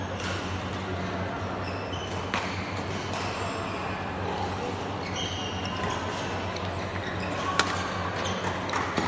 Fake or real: real